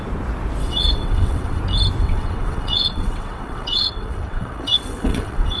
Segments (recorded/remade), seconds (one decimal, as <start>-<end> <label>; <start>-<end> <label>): 0.0-0.6 recorded; 0.6-1.6 remade; 1.6-2.0 recorded; 2.0-5.6 remade